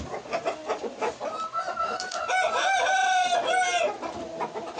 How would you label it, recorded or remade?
recorded